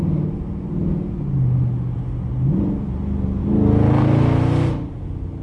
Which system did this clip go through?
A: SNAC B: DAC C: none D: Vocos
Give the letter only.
C